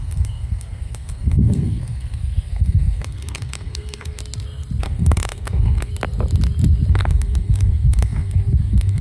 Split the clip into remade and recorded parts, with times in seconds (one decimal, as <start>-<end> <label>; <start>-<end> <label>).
0.0-4.2 remade; 4.2-4.8 recorded; 4.8-5.9 remade; 5.9-6.9 recorded; 6.9-9.0 remade

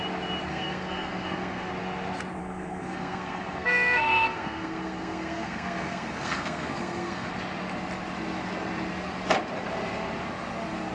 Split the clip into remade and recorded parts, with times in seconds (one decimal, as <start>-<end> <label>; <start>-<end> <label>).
0.0-0.5 recorded; 0.5-1.7 remade; 1.7-2.4 recorded; 2.4-7.3 remade; 7.3-10.9 recorded

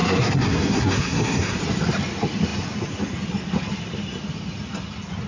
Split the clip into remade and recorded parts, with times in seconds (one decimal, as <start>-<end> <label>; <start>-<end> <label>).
0.0-1.6 remade; 1.6-5.3 recorded

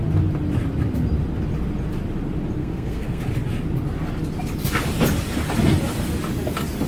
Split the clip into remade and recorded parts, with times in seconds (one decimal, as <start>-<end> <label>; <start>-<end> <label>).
0.0-2.6 recorded; 2.6-3.2 remade; 3.2-6.9 recorded

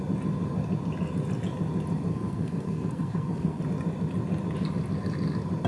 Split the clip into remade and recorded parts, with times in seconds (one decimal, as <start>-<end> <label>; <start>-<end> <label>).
0.0-2.1 recorded; 2.1-3.6 remade; 3.6-5.7 recorded